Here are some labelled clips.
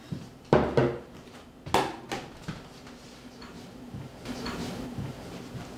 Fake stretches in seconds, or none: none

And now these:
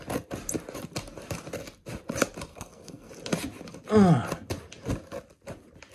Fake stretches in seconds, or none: 2.5-3.1 (codec, SNAC)

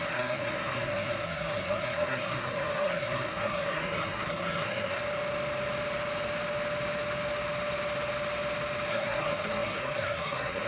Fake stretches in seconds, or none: 0.0-5.0 (codec, SNAC); 8.9-10.7

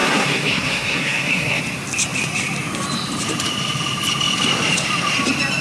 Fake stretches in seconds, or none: 0.0-1.6 (codec, SNAC)

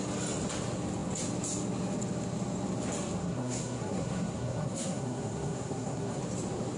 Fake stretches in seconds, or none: 3.2-6.2 (codec, SNAC)

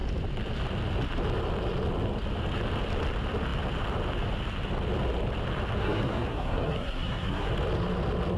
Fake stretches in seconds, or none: 5.8-7.5 (codec, SNAC)

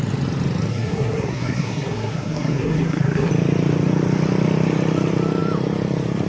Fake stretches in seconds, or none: 0.7-3.3 (codec, SNAC)